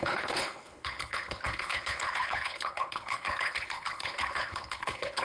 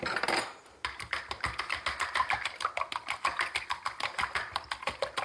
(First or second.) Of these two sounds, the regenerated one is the first